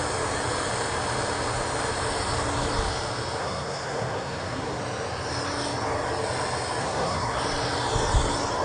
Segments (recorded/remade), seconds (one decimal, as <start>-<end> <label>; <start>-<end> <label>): 0.0-3.4 recorded; 3.4-4.8 remade; 4.8-6.8 recorded; 6.8-7.4 remade; 7.4-8.6 recorded